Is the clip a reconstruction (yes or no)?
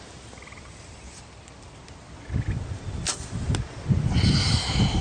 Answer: no